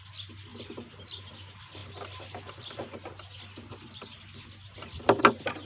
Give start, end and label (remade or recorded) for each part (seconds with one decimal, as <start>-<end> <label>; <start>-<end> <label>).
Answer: 0.0-5.7 recorded